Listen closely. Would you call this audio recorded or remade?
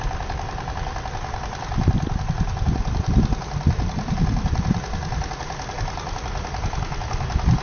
recorded